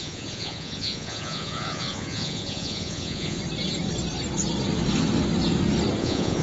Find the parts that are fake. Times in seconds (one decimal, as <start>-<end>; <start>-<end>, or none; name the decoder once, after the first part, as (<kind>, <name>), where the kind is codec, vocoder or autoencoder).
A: 0.0-3.4 (vocoder, Vocos); 6.0-6.4